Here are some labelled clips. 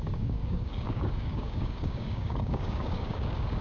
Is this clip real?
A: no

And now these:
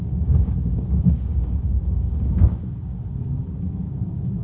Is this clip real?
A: no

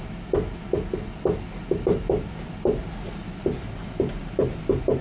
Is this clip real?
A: yes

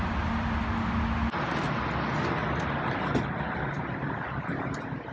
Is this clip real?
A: yes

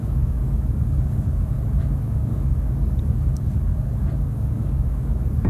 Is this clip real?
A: no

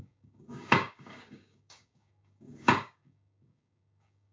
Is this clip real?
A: no